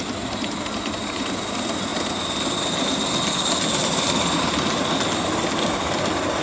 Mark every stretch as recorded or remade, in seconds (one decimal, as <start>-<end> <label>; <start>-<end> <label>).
0.0-6.4 recorded